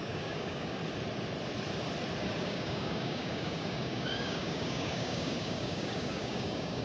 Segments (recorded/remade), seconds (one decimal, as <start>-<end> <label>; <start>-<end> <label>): 0.0-0.8 remade; 0.8-2.4 recorded; 2.4-6.8 remade